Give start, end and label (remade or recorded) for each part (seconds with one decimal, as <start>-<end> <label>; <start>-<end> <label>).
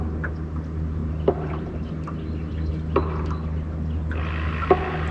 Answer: 0.0-1.0 recorded; 1.0-1.9 remade; 1.9-5.1 recorded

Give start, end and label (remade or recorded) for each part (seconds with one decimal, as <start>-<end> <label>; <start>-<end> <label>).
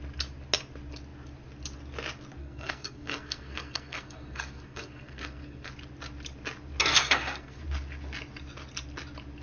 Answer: 0.0-2.4 recorded; 2.4-5.7 remade; 5.7-6.8 recorded; 6.8-7.6 remade; 7.6-9.4 recorded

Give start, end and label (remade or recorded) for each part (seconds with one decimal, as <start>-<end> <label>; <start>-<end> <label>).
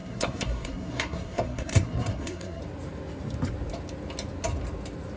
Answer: 0.0-2.6 remade; 2.6-5.2 recorded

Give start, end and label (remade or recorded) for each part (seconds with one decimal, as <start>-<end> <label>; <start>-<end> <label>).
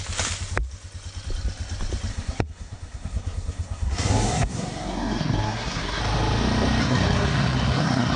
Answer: 0.0-2.1 recorded; 2.1-6.0 remade; 6.0-6.8 recorded; 6.8-8.2 remade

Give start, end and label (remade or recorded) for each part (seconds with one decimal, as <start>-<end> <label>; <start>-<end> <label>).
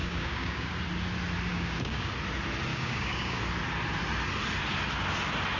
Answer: 0.0-0.8 remade; 0.8-1.5 recorded; 1.5-2.1 remade; 2.1-2.7 recorded; 2.7-3.4 remade; 3.4-5.6 recorded